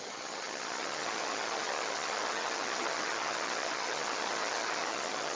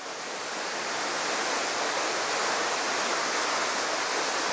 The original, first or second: second